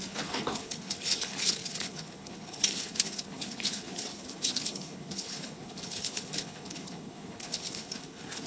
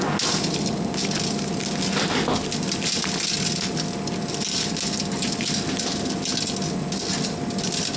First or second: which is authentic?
second